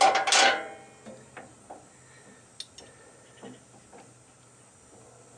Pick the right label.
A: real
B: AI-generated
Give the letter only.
A